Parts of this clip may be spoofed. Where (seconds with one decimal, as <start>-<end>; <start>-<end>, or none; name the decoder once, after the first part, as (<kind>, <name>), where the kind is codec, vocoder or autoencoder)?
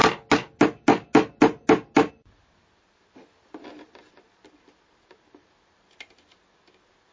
none